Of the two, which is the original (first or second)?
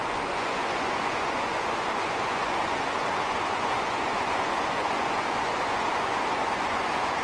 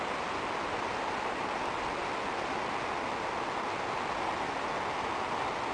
second